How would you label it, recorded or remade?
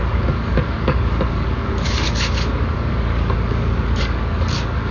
remade